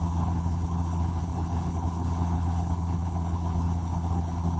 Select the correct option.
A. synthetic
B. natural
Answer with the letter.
A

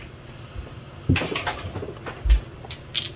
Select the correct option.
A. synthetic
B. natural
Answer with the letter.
B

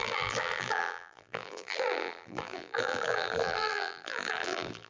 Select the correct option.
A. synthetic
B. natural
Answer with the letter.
A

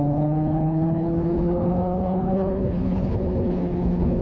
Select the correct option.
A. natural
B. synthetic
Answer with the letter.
B